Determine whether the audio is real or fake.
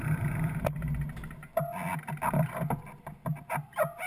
real